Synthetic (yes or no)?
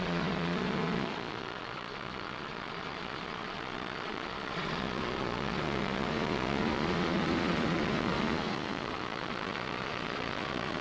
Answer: yes